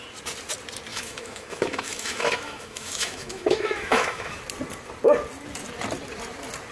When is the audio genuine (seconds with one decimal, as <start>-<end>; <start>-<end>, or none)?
0.0-0.9; 4.4-6.7